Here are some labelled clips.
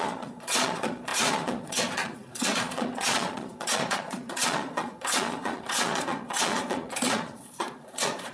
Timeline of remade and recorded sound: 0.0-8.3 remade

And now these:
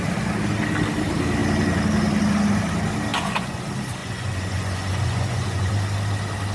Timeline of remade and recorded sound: 0.0-3.1 recorded; 3.1-3.6 remade; 3.6-4.0 recorded; 4.0-5.7 remade; 5.7-6.5 recorded

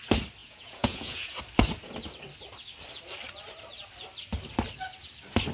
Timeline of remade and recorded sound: 0.0-0.4 recorded; 0.4-1.3 remade; 1.3-5.5 recorded

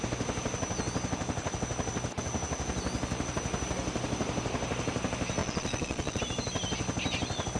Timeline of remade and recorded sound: 0.0-5.4 recorded; 5.4-6.2 remade; 6.2-7.6 recorded